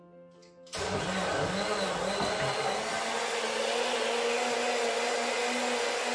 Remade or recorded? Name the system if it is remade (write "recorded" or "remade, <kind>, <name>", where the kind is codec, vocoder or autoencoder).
recorded